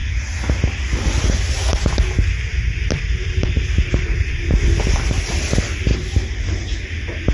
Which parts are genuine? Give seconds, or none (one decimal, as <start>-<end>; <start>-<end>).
0.0-2.5; 5.3-5.9; 6.4-7.3